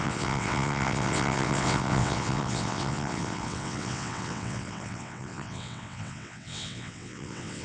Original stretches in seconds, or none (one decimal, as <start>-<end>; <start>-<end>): none